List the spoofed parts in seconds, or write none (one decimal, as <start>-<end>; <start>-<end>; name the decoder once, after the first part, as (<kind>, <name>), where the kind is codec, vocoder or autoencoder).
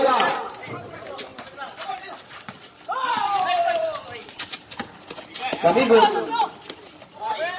none